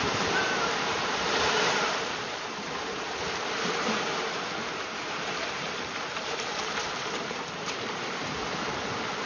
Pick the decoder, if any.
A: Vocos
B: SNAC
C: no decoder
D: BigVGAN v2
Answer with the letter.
D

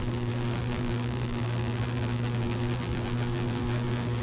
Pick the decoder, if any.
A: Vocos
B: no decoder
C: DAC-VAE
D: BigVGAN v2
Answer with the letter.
D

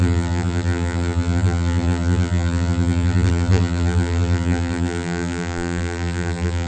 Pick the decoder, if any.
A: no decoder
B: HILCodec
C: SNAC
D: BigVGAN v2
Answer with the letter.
D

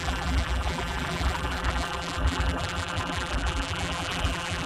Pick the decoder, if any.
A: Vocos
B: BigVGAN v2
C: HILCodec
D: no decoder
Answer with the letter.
B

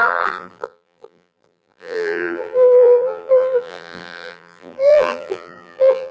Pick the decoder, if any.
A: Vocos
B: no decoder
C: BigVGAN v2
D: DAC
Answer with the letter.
C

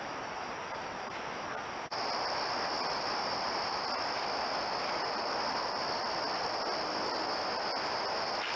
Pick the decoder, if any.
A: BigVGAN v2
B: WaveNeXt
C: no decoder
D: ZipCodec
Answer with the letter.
C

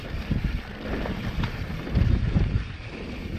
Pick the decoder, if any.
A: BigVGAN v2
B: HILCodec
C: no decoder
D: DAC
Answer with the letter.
C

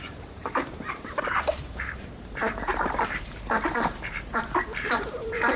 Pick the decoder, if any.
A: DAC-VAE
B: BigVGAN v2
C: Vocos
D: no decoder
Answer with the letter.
B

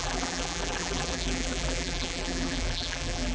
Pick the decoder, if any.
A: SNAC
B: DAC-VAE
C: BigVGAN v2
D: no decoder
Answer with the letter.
C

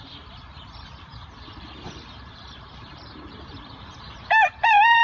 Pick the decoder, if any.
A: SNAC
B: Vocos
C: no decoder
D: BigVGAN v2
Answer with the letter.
D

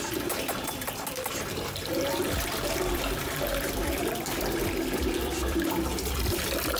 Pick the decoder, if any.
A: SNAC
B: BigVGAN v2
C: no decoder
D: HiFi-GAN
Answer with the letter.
B